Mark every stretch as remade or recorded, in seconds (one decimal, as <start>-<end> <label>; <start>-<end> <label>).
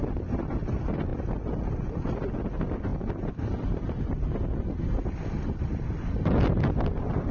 0.0-7.3 recorded